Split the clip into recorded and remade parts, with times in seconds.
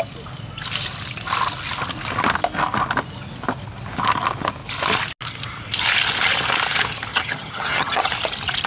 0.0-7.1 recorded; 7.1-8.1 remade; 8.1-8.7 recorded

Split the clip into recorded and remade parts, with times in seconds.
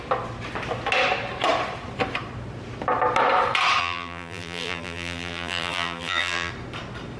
0.0-3.8 recorded; 3.8-6.5 remade; 6.5-7.2 recorded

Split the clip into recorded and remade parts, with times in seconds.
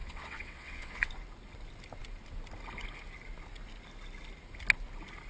0.0-1.1 remade; 1.1-5.3 recorded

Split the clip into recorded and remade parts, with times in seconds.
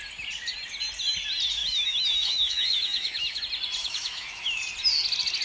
0.0-1.6 recorded; 1.6-3.4 remade; 3.4-3.8 recorded; 3.8-4.6 remade; 4.6-5.4 recorded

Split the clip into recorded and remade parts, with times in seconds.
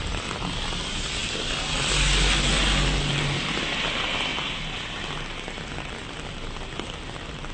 0.0-7.5 recorded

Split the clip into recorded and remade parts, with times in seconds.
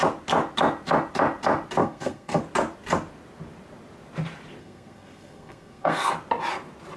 0.0-1.8 recorded; 1.8-2.4 remade; 2.4-4.6 recorded; 4.6-6.1 remade; 6.1-7.0 recorded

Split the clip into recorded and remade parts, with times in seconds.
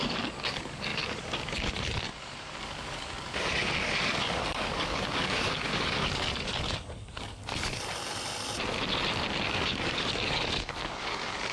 0.0-7.4 remade; 7.4-9.5 recorded; 9.5-11.5 remade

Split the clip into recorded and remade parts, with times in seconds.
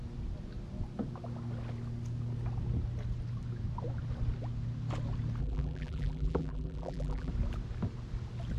0.0-5.4 recorded; 5.4-7.3 remade; 7.3-8.6 recorded